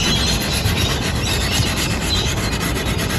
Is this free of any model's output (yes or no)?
yes